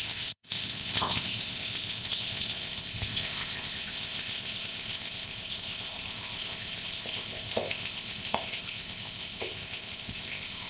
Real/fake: fake